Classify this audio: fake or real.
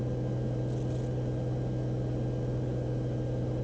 real